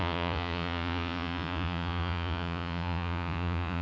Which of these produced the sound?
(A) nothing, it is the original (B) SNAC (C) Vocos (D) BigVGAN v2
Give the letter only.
C